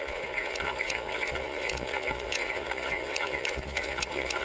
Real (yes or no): no